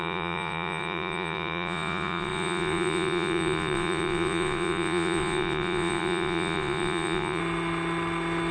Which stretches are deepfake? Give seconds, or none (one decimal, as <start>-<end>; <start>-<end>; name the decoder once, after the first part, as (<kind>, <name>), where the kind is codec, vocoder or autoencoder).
0.0-7.4 (vocoder, Vocos)

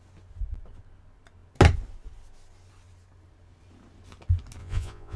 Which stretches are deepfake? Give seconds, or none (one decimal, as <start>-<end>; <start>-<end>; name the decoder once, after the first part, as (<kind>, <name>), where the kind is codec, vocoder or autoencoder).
4.6-5.2 (vocoder, Vocos)

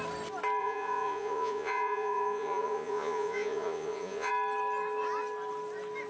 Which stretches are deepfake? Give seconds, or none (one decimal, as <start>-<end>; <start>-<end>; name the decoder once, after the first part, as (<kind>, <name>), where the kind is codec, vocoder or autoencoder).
0.6-4.3 (vocoder, Vocos)

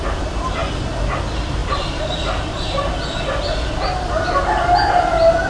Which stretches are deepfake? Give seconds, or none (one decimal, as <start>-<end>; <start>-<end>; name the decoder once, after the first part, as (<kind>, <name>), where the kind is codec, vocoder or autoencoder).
none

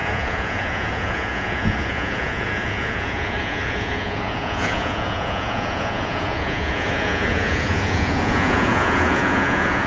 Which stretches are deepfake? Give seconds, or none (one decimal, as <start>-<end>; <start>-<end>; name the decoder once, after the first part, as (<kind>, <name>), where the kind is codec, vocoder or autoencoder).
0.0-9.9 (vocoder, Vocos)

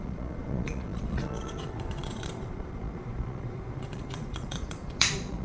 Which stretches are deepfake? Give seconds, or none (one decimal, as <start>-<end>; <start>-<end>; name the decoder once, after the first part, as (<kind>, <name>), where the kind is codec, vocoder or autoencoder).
0.0-5.4 (vocoder, Vocos)